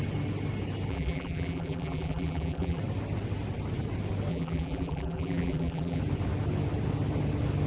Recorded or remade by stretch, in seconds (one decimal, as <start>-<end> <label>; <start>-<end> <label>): 0.0-0.9 recorded; 0.9-2.8 remade; 2.8-4.3 recorded; 4.3-6.0 remade; 6.0-7.7 recorded